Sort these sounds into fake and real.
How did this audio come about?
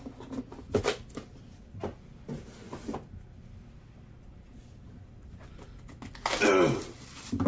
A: real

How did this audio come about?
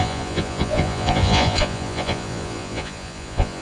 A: fake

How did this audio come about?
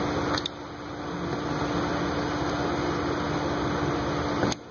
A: real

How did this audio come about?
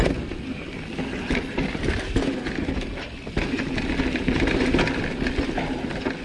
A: real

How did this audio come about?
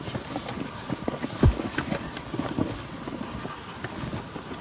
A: real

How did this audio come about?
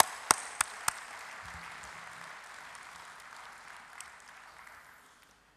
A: real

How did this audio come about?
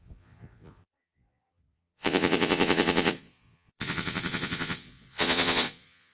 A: fake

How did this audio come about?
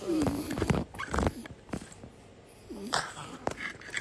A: real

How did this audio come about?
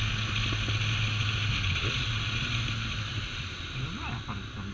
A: real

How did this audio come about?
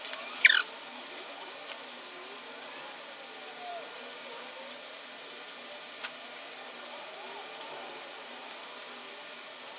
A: real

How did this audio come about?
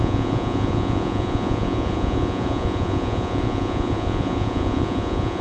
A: fake